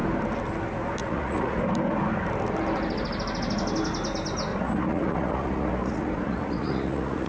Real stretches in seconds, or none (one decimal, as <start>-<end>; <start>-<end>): 0.0-1.0; 1.6-4.5